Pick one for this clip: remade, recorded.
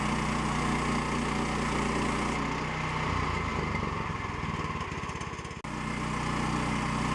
recorded